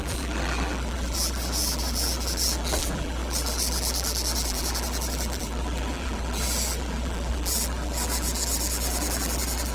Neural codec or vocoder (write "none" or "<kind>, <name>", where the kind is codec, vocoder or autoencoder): vocoder, BigVGAN v2